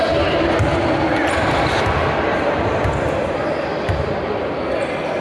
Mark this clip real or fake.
real